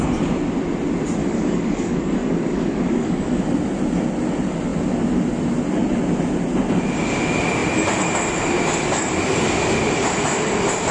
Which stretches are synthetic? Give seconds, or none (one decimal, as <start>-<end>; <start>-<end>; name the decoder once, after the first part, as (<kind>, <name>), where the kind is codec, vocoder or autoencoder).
1.2-3.4 (codec, DAC)